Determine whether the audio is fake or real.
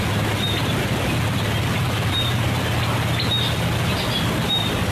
real